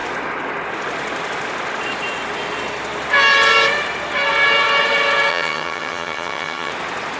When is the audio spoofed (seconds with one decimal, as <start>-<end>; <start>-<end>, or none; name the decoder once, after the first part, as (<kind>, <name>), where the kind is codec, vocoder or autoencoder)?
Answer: 5.3-6.7 (vocoder, HiFi-GAN)